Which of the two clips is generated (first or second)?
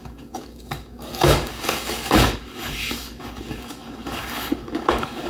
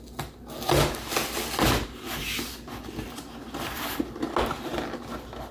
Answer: first